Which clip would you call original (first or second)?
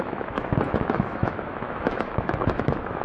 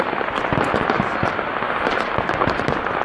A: second